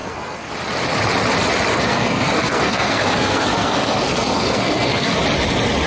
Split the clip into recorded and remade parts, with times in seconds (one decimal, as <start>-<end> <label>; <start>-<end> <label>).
0.0-0.5 remade; 0.5-1.7 recorded; 1.7-5.2 remade; 5.2-5.9 recorded